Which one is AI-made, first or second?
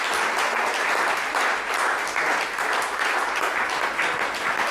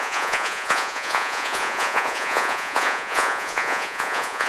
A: second